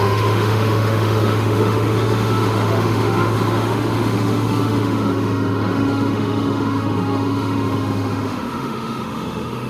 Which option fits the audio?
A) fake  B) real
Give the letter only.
A